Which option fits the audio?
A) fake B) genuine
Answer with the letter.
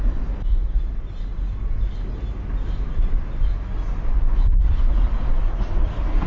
B